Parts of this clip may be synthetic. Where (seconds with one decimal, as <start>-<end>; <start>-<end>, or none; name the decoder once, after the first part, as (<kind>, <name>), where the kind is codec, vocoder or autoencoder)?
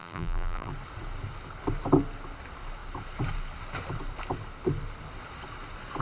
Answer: 0.0-0.7 (vocoder, BigVGAN v2)